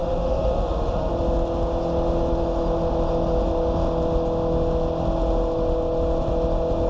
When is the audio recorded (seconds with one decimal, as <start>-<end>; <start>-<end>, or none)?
1.1-6.9